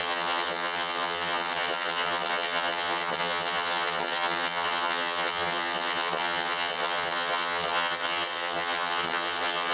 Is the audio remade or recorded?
remade